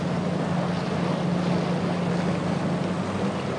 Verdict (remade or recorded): recorded